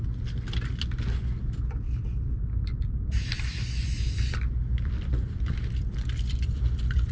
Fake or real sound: real